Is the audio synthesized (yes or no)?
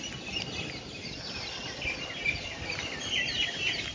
no